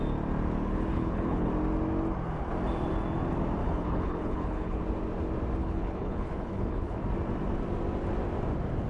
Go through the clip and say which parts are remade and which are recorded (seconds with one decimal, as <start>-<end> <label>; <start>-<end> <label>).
0.0-0.9 recorded; 0.9-1.5 remade; 1.5-3.6 recorded; 3.6-4.8 remade; 4.8-5.6 recorded; 5.6-7.0 remade; 7.0-8.9 recorded